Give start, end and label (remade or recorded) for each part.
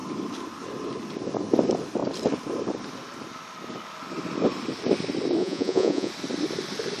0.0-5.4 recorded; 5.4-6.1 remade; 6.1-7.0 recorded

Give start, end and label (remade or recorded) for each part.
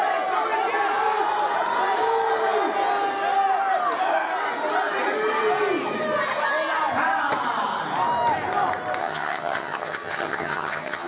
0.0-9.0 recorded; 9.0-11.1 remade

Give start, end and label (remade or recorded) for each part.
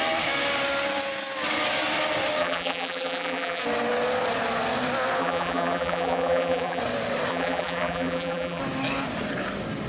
0.0-2.4 recorded; 2.4-3.6 remade; 3.6-5.2 recorded; 5.2-6.8 remade; 6.8-7.3 recorded; 7.3-8.6 remade; 8.6-9.9 recorded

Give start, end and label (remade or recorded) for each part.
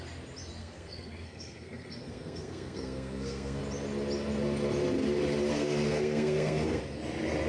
0.0-0.6 recorded; 0.6-3.6 remade; 3.6-5.5 recorded; 5.5-6.8 remade; 6.8-7.5 recorded